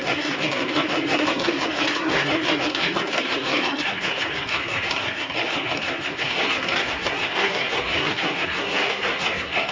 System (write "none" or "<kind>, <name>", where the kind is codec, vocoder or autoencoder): codec, SNAC